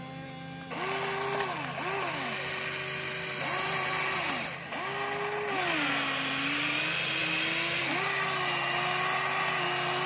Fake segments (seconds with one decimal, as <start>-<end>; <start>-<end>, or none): none